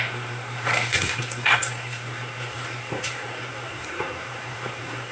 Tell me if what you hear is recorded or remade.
remade